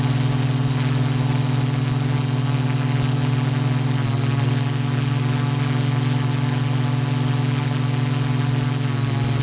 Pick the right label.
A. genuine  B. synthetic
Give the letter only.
A